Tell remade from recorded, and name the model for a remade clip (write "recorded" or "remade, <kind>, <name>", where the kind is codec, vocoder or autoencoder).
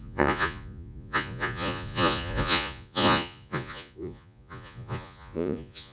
remade, vocoder, Vocos